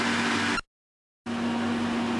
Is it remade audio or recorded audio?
recorded